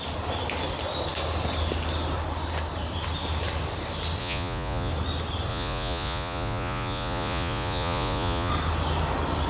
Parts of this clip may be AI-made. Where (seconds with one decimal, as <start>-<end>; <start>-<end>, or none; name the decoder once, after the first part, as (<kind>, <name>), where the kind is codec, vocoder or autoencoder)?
4.2-4.9 (vocoder, Vocos); 5.5-8.5